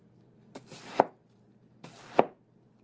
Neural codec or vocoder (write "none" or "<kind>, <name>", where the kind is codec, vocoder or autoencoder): vocoder, BigVGAN v2